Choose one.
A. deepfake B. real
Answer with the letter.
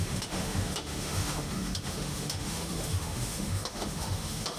A